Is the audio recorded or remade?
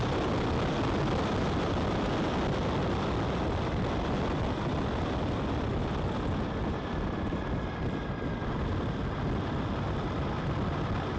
recorded